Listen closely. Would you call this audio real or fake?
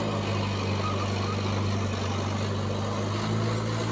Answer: real